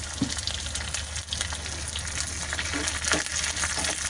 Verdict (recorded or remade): recorded